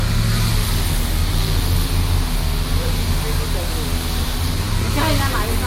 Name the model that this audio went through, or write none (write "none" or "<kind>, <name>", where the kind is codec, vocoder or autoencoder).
none